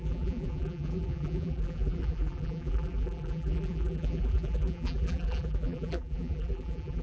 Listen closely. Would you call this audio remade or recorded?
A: remade